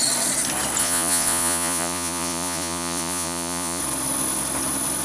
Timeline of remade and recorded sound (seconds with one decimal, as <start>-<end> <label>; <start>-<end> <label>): 0.0-0.8 recorded; 0.8-3.8 remade; 3.8-5.0 recorded